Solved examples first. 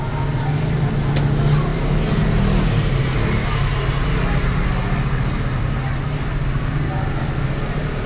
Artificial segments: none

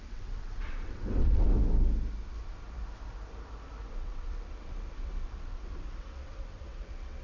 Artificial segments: 0.0-1.5 (vocoder, WaveNeXt); 3.9-7.2

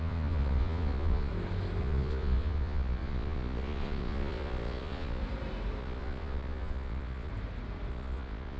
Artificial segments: 0.0-1.3 (vocoder, Vocos); 1.8-5.2; 5.8-7.3; 7.9-8.6

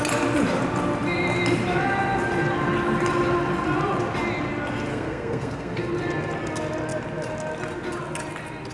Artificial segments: 4.9-5.9 (codec, SNAC)

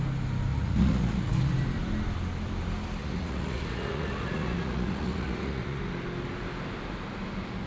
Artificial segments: 0.5-1.5 (vocoder, Vocos); 3.0-5.8

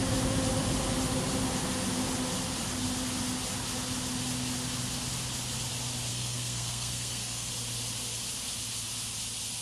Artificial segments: 6.1-7.5 (codec, SNAC)

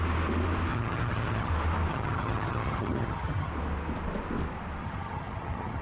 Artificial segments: 0.7-1.5 (vocoder, HiFi-GAN); 1.9-3.5; 4.8-5.8